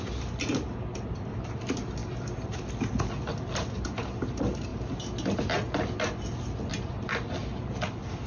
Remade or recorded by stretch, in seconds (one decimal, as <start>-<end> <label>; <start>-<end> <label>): 0.0-8.3 recorded